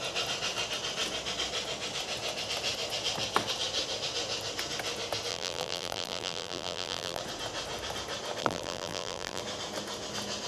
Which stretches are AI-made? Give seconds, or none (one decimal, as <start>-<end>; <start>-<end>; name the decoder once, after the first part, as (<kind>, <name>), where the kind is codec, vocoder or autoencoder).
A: 5.3-7.2 (vocoder, BigVGAN v2); 8.4-9.4